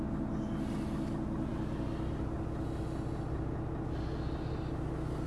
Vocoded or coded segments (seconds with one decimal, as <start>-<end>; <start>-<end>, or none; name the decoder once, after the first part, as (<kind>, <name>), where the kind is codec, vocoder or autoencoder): none